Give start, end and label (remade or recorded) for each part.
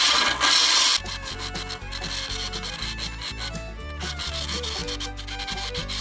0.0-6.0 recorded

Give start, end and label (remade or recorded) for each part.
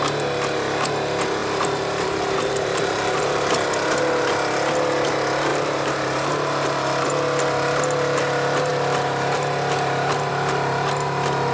0.0-1.4 recorded; 1.4-3.5 remade; 3.5-5.5 recorded; 5.5-7.1 remade; 7.1-11.5 recorded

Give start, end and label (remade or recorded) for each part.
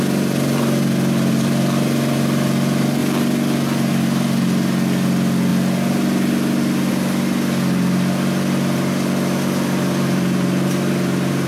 0.0-3.0 remade; 3.0-3.9 recorded; 3.9-5.5 remade; 5.5-6.9 recorded; 6.9-11.5 remade